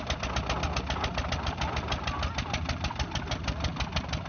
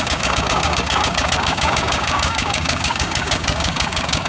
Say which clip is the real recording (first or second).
first